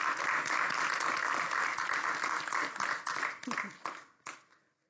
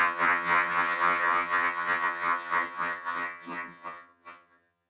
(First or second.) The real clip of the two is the first